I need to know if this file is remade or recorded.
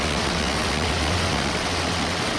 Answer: remade